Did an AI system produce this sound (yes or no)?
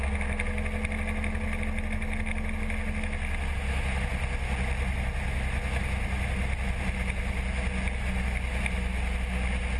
no